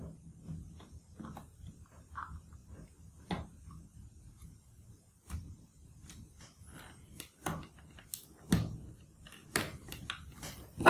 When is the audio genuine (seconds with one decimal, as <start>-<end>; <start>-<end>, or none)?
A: 0.0-10.9